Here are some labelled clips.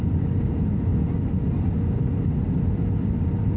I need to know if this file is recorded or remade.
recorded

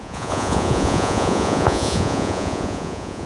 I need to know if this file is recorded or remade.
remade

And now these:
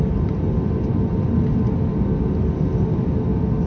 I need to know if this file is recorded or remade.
recorded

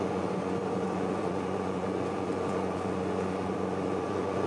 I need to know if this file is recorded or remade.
remade